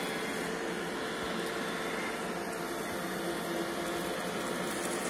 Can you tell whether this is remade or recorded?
recorded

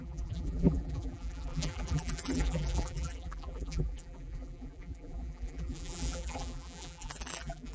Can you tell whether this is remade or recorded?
remade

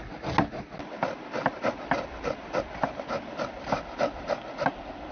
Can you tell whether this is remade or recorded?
recorded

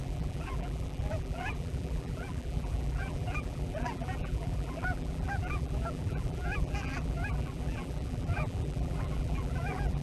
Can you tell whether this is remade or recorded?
remade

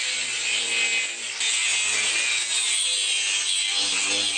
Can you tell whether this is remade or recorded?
recorded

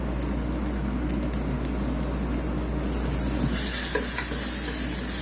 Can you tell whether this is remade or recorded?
recorded